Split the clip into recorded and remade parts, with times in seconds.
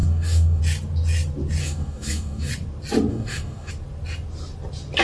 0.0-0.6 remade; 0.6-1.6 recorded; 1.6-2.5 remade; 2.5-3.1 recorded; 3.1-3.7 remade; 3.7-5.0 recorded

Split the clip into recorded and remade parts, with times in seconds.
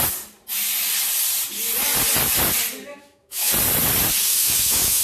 0.0-2.9 recorded; 2.9-3.5 remade; 3.5-4.2 recorded; 4.2-5.0 remade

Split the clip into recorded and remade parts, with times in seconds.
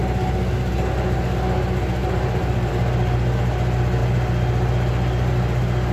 0.0-2.0 recorded; 2.0-2.7 remade; 2.7-5.9 recorded